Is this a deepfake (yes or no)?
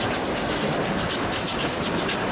no